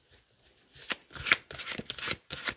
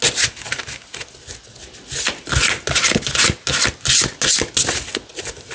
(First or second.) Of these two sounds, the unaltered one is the second